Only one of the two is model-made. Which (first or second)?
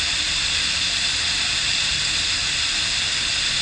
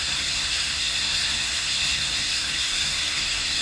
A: second